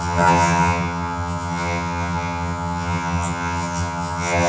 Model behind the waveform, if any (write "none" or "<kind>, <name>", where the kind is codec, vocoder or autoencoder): vocoder, HiFi-GAN